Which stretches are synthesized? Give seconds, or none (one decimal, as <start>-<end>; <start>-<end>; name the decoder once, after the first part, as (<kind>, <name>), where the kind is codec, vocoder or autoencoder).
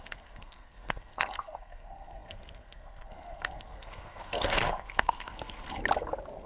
0.0-5.8 (codec, SNAC)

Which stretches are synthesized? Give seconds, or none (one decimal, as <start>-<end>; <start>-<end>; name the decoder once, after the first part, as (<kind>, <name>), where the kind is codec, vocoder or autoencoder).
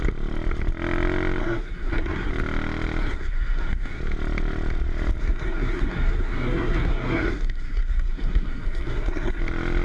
1.4-2.3 (codec, SNAC); 3.0-4.0; 5.2-9.4